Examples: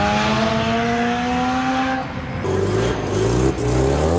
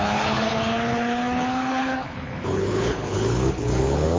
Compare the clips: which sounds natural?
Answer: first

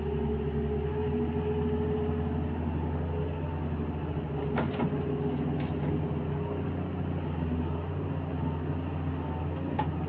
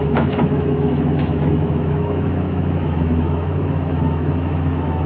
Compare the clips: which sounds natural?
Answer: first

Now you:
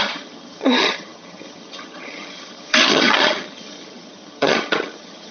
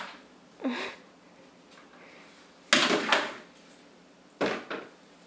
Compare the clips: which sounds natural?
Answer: second